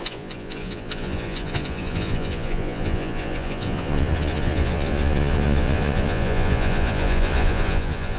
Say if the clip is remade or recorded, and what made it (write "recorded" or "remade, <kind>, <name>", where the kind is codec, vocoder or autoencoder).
remade, vocoder, Vocos